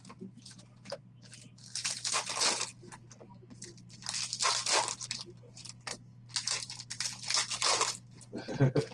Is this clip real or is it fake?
real